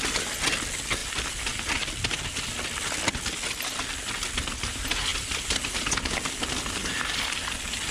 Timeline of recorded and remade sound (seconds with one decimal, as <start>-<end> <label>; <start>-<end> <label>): 0.0-7.9 recorded

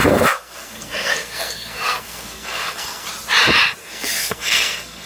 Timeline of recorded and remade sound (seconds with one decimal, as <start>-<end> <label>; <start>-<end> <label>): 0.0-3.1 remade; 3.1-3.8 recorded; 3.8-5.1 remade

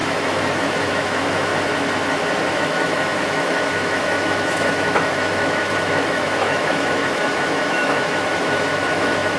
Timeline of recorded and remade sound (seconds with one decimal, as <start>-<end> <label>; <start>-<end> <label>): 0.0-1.5 remade; 1.5-2.5 recorded; 2.5-9.4 remade